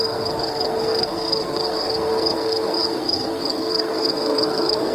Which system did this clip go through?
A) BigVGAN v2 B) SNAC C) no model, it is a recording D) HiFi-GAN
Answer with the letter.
B